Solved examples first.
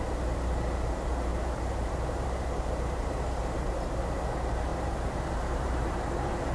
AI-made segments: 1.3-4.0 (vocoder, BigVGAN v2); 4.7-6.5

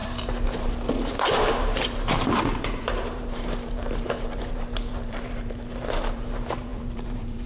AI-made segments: 0.9-7.5 (vocoder, BigVGAN v2)

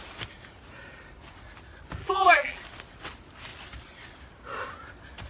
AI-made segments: 2.0-2.6 (vocoder, BigVGAN v2)